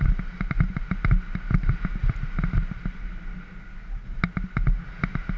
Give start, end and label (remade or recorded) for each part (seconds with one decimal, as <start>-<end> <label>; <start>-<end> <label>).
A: 0.0-5.4 recorded